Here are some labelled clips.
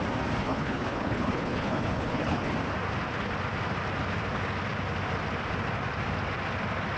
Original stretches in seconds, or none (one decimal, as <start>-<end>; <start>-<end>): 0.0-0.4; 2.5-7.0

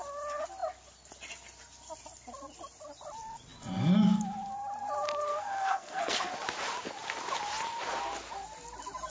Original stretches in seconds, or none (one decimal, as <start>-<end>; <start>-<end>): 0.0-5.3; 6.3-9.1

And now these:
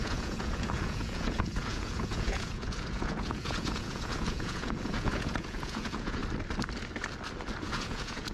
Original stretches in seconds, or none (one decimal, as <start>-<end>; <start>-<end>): 6.2-7.6